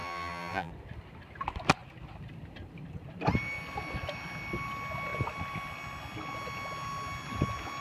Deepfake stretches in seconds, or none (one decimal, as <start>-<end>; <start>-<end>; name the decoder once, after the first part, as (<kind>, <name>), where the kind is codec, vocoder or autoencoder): 0.0-0.7 (vocoder, BigVGAN v2)